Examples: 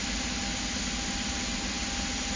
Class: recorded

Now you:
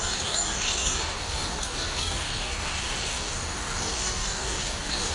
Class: remade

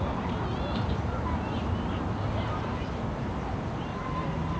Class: recorded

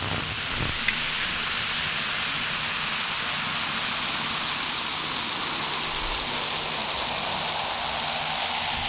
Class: recorded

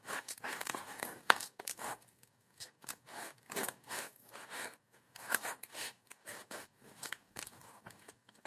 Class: remade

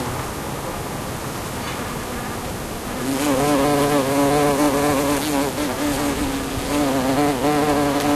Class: recorded